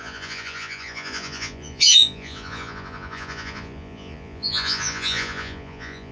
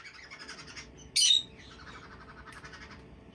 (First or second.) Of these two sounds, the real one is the second